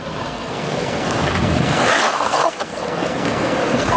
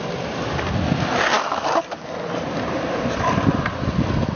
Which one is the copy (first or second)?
first